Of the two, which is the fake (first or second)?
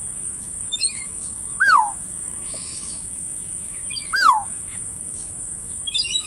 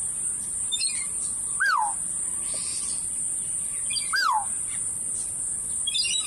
first